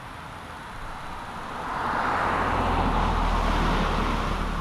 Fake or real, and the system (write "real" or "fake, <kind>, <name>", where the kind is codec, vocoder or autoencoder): real